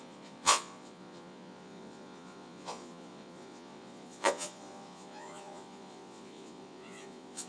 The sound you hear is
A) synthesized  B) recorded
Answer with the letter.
A